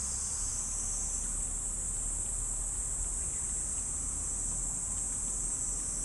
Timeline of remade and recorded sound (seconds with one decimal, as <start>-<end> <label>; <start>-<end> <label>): 0.0-6.0 recorded